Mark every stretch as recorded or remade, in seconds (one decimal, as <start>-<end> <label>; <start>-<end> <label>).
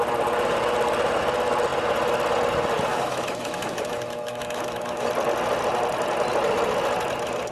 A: 0.0-2.9 recorded; 2.9-5.1 remade; 5.1-7.5 recorded